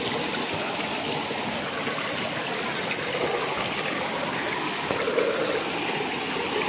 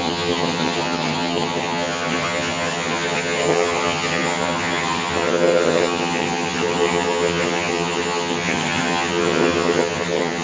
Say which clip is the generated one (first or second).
second